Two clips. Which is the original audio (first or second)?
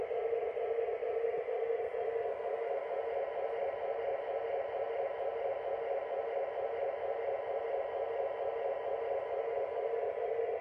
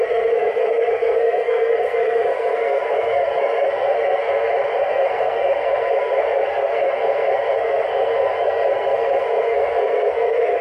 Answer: first